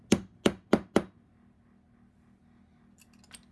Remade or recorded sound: recorded